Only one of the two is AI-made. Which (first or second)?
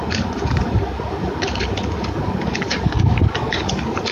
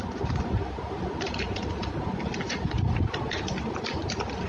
first